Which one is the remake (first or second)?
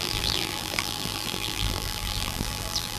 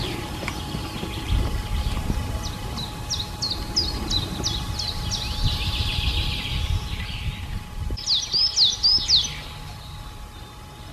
first